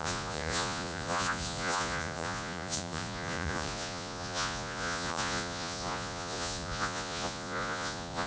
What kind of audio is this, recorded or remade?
remade